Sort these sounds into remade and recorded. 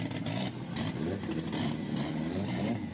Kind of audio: remade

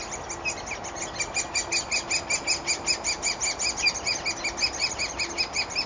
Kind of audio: recorded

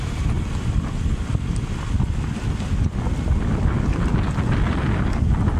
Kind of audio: recorded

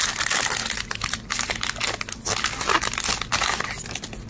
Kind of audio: recorded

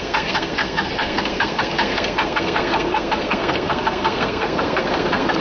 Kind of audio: remade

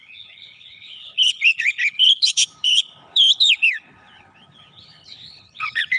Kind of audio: remade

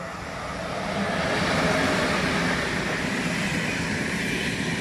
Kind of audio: recorded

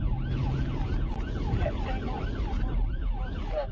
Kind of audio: recorded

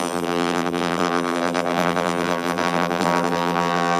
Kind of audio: remade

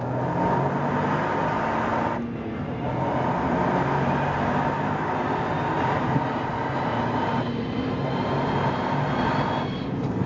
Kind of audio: recorded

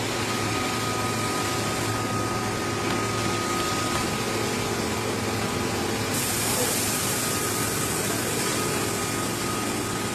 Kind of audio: recorded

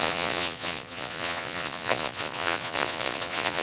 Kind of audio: remade